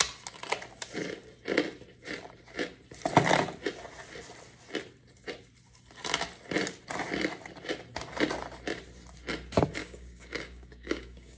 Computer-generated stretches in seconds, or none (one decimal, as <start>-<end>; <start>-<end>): 9.8-11.4